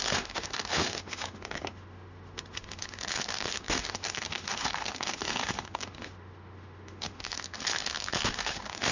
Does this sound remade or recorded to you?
remade